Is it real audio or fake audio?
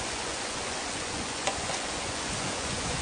fake